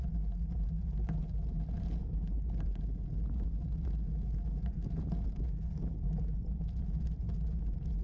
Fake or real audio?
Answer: real